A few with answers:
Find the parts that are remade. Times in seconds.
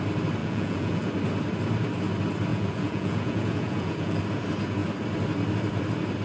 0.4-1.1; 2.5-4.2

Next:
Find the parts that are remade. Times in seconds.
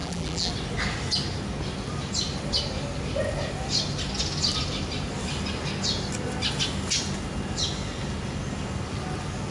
0.0-0.5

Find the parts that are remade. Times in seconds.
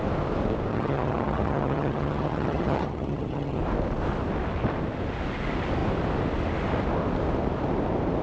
0.7-3.6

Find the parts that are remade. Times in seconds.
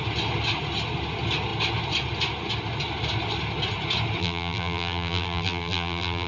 4.2-6.3